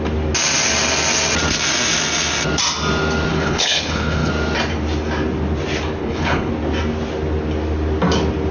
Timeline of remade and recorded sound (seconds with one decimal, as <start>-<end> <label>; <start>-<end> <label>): 0.0-3.3 recorded; 3.3-4.3 remade; 4.3-6.0 recorded; 6.0-6.5 remade; 6.5-8.5 recorded

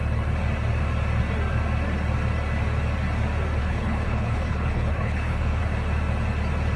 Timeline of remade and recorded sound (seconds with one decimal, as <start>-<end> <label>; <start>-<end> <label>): 0.0-3.6 recorded; 3.6-5.6 remade; 5.6-6.8 recorded

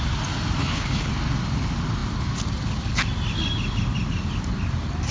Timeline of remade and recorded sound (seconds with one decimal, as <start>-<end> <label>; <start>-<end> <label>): 0.0-0.6 recorded; 0.6-1.1 remade; 1.1-5.1 recorded

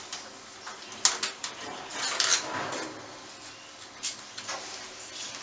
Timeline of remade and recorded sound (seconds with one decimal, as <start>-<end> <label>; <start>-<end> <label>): 0.0-5.4 recorded

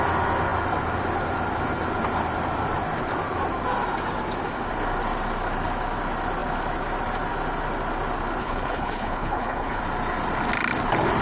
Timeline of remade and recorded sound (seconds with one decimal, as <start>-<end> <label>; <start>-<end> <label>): 0.0-8.4 recorded; 8.4-9.8 remade; 9.8-11.2 recorded

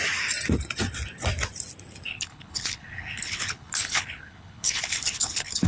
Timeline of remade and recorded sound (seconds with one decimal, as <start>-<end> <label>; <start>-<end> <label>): 0.0-2.1 recorded; 2.1-5.7 remade